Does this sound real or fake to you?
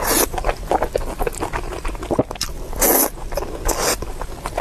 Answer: real